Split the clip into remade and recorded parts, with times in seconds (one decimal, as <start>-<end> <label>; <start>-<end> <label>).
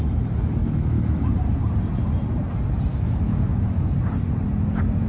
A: 0.0-0.6 recorded; 0.6-1.3 remade; 1.3-2.9 recorded; 2.9-3.8 remade; 3.8-5.1 recorded